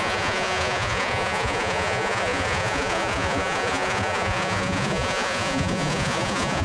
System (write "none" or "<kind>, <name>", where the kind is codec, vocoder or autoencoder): vocoder, Vocos